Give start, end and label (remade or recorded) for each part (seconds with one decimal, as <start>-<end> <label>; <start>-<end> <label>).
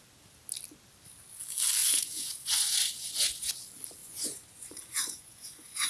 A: 0.0-1.8 recorded; 1.8-3.5 remade; 3.5-4.0 recorded; 4.0-5.9 remade